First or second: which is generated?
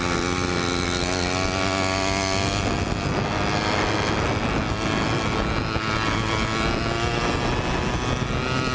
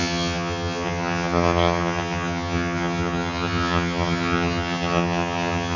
second